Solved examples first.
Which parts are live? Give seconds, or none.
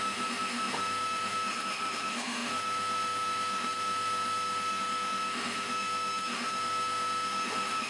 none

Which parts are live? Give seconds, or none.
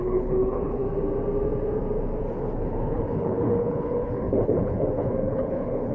0.8-2.2